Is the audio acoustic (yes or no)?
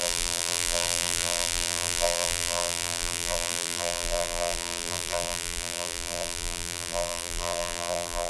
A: no